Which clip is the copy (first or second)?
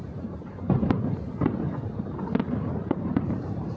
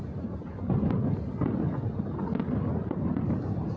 first